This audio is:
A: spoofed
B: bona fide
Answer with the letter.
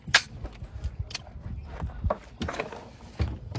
B